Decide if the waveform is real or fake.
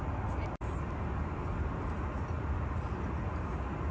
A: real